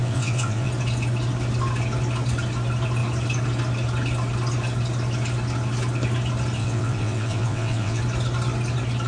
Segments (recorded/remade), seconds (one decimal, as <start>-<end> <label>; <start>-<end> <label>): 0.0-0.7 remade; 0.7-6.6 recorded; 6.6-8.0 remade; 8.0-9.1 recorded